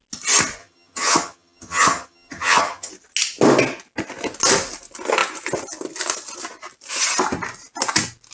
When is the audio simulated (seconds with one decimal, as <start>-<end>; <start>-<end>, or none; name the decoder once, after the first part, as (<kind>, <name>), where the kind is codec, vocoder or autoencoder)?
0.6-2.9 (vocoder, HiFi-GAN)